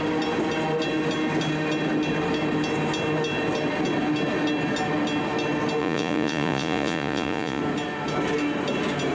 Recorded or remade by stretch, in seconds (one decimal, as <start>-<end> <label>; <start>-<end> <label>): 0.0-5.8 recorded; 5.8-7.6 remade; 7.6-9.1 recorded